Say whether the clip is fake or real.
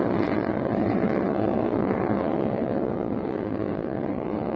fake